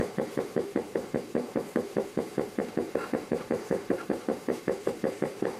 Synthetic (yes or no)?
yes